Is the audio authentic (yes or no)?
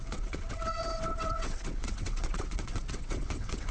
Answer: no